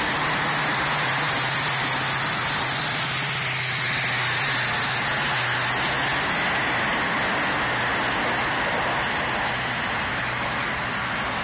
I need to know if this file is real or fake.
real